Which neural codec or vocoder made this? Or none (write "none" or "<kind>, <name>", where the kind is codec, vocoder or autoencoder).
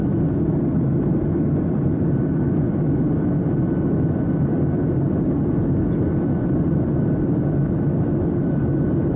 none